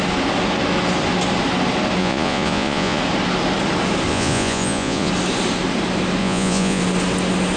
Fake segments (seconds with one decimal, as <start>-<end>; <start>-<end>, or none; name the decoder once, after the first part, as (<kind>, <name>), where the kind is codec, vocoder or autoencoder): 2.0-3.0 (vocoder, Vocos); 4.1-5.1; 6.2-6.8